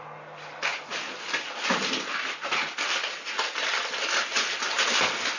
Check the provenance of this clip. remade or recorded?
recorded